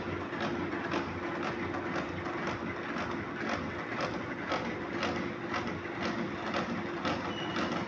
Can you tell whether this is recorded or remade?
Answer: recorded